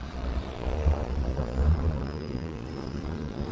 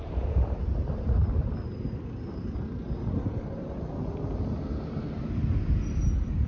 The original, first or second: second